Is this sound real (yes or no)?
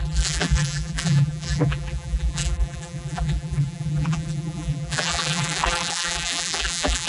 no